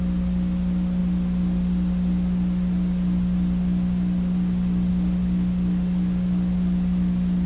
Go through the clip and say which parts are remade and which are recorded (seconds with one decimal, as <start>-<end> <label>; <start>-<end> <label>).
0.0-7.5 recorded